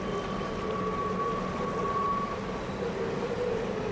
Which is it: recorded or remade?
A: recorded